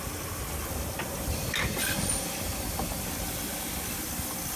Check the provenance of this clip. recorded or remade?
recorded